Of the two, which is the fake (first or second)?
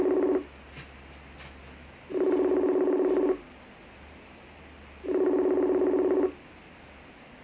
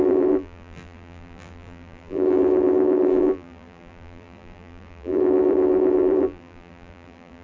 second